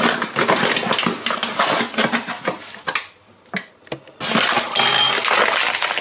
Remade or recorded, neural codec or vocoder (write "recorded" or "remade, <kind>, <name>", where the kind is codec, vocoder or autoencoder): recorded